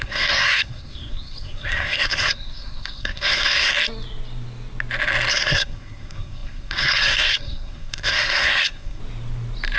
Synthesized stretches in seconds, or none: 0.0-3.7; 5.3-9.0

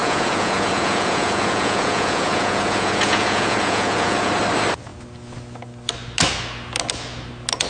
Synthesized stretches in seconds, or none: 0.0-4.3

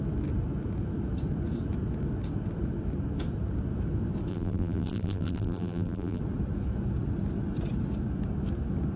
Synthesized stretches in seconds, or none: 4.3-6.2